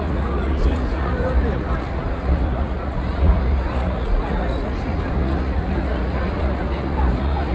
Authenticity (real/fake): fake